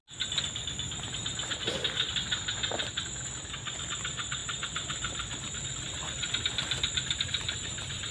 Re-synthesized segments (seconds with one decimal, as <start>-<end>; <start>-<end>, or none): 3.8-8.1